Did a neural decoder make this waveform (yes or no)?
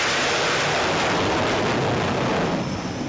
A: no